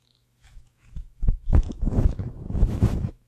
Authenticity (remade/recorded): remade